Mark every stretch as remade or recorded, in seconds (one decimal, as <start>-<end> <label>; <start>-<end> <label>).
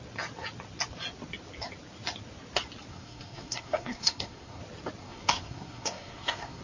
0.0-2.9 recorded; 2.9-4.6 remade; 4.6-5.0 recorded; 5.0-6.6 remade